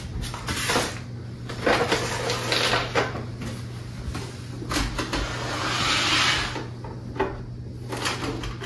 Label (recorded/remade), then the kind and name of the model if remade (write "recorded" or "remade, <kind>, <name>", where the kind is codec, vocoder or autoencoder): recorded